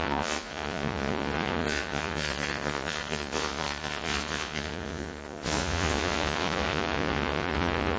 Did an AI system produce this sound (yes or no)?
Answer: yes